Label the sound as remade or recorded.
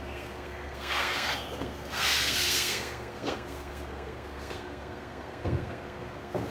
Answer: remade